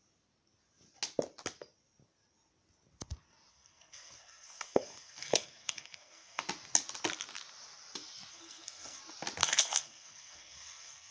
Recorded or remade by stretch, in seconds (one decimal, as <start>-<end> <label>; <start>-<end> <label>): 0.0-3.5 recorded; 3.5-6.4 remade; 6.4-8.3 recorded; 8.3-9.0 remade; 9.0-9.4 recorded; 9.4-11.1 remade